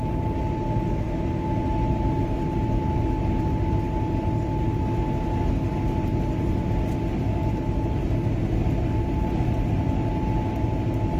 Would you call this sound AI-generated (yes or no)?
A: no